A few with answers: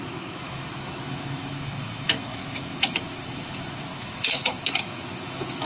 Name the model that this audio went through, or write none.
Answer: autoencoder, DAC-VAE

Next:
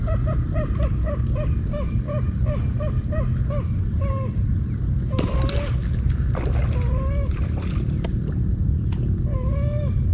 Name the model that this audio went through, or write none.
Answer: none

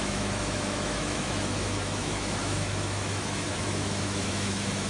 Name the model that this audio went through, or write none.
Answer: autoencoder, DAC-VAE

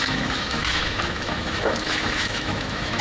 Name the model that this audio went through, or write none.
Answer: autoencoder, DAC-VAE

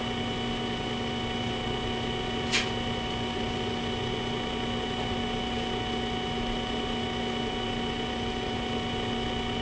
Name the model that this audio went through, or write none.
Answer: none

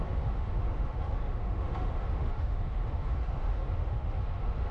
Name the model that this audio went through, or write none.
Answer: autoencoder, DAC-VAE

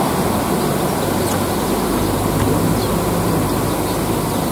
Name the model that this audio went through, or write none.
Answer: none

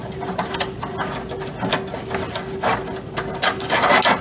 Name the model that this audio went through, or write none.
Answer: none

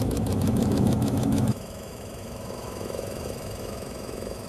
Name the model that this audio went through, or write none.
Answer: autoencoder, DAC-VAE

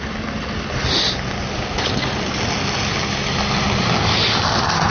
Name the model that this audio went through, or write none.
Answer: none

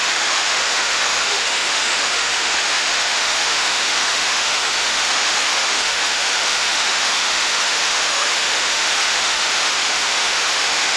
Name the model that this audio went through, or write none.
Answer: autoencoder, DAC-VAE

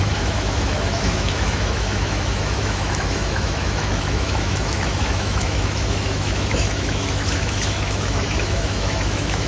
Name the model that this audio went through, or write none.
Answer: autoencoder, DAC-VAE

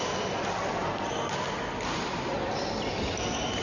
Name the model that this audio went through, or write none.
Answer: none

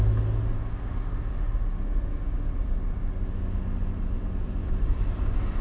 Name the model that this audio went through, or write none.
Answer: none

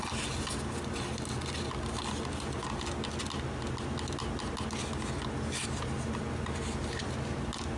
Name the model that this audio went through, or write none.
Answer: none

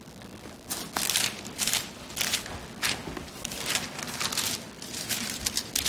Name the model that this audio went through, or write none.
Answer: none